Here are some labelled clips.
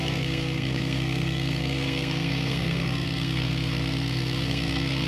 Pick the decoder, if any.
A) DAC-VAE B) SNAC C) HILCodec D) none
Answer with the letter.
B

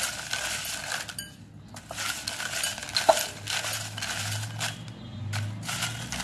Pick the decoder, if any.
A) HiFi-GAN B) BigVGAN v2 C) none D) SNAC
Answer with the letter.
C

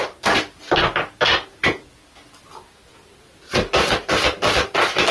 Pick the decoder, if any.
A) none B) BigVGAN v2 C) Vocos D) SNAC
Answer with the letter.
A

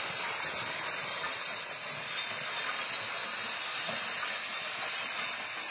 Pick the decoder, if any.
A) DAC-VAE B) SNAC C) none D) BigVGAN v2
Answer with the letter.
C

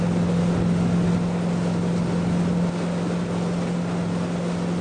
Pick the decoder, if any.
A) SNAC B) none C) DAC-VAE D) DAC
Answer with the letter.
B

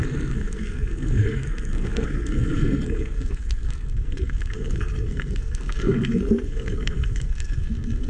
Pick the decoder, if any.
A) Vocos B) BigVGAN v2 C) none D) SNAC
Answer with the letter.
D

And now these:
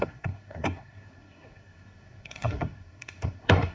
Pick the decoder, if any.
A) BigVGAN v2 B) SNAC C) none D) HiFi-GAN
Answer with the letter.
B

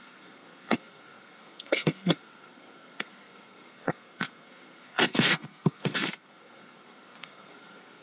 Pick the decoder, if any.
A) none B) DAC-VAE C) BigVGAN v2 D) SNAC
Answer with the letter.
D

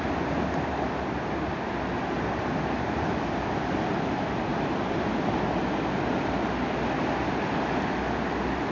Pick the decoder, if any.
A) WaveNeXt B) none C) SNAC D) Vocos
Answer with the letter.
B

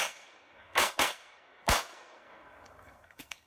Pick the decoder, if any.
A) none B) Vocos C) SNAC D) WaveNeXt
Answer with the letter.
C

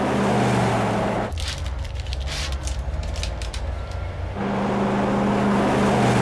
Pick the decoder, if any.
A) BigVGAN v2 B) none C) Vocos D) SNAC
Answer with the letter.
B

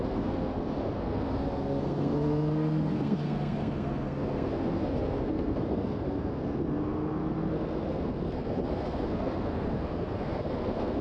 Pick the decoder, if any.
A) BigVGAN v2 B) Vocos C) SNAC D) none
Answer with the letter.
C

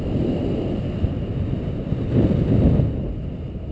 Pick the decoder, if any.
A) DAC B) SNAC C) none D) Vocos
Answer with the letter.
C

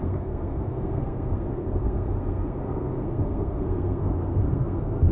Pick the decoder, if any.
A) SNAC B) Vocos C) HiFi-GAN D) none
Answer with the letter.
A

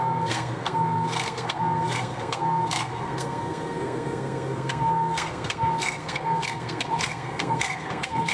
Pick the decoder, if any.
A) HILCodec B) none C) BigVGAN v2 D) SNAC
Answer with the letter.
D